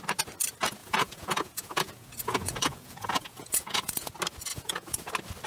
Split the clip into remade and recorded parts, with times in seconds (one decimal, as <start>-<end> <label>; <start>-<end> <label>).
0.0-0.8 recorded; 0.8-4.1 remade; 4.1-4.5 recorded; 4.5-5.1 remade; 5.1-5.5 recorded